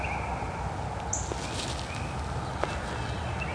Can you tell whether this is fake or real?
real